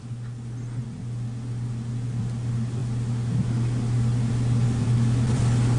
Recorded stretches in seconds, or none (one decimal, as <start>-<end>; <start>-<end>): 0.0-5.8